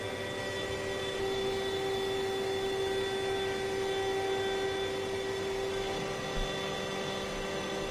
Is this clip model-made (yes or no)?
no